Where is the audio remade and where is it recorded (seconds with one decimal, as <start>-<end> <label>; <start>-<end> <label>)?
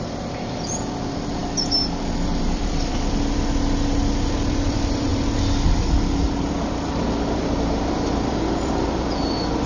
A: 0.0-1.4 remade; 1.4-2.4 recorded; 2.4-9.7 remade